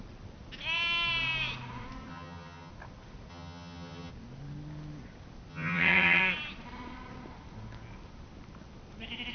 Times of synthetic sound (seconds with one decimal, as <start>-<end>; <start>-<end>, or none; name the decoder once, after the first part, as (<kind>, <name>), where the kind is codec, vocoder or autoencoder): 2.1-2.7 (vocoder, HiFi-GAN); 3.3-4.1; 5.5-6.2